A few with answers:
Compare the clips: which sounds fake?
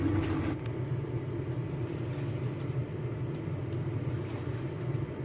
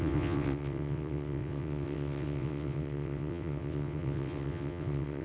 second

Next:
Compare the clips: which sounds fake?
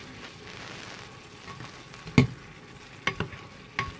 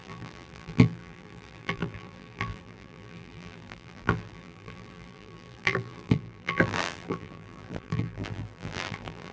second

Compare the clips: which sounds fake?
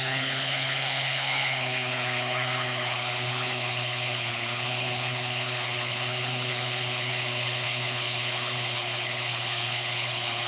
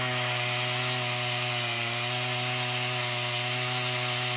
first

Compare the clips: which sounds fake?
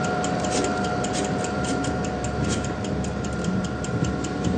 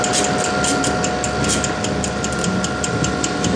first